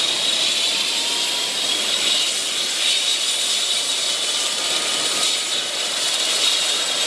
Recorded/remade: remade